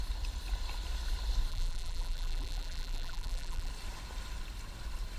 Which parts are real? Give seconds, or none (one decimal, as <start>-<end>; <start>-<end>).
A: 0.0-1.5; 3.7-5.2